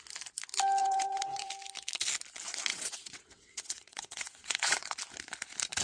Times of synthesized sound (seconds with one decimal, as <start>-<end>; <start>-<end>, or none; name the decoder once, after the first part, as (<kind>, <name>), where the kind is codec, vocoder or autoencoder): 0.8-1.5 (vocoder, WaveNeXt); 2.7-5.0

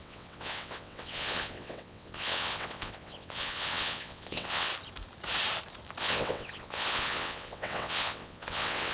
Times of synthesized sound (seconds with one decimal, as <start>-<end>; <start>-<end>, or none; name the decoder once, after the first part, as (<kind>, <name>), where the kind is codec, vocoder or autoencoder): 0.0-4.7 (vocoder, WaveNeXt); 6.0-8.9

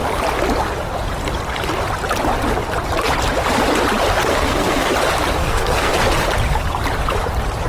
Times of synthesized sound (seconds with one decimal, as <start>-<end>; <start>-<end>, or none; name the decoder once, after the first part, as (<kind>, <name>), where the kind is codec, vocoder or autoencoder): 4.3-4.9 (codec, SNAC); 5.4-5.9

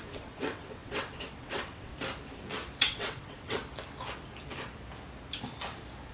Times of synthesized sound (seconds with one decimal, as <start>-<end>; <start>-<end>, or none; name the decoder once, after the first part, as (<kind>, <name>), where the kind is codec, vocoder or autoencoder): 0.0-1.9 (vocoder, WaveNeXt); 2.8-3.6

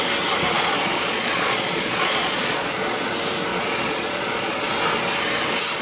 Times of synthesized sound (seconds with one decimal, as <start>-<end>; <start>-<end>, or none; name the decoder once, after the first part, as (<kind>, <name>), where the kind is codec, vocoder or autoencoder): 0.5-3.1 (vocoder, Vocos); 3.5-4.7

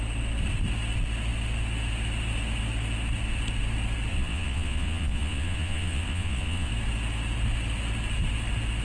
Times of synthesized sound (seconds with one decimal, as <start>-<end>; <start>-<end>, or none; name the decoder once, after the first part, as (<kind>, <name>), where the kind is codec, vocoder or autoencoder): 4.1-6.7 (vocoder, Vocos)

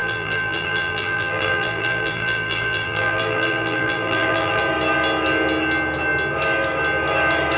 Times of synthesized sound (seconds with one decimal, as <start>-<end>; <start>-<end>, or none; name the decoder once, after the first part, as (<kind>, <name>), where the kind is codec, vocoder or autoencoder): 0.0-4.6 (vocoder, BigVGAN v2)